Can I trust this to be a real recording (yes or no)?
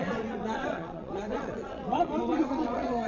no